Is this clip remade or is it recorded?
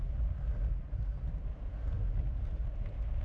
recorded